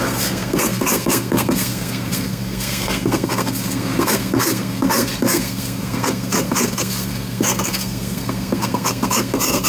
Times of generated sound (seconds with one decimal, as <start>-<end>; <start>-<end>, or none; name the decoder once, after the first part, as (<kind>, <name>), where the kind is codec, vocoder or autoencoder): 0.0-9.7 (codec, SNAC)